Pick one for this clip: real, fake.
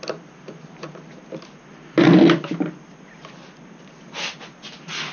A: real